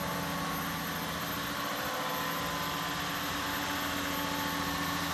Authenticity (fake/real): real